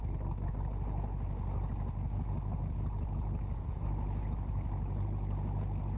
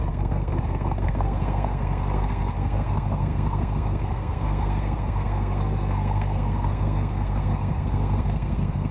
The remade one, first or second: second